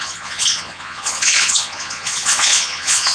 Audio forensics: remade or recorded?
remade